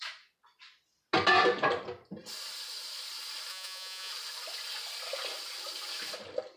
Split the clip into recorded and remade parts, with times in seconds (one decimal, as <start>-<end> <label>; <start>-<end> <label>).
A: 0.0-3.5 recorded; 3.5-4.1 remade; 4.1-6.6 recorded